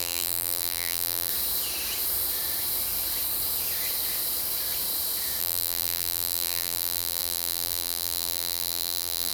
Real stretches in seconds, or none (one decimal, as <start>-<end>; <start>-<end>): 1.3-5.4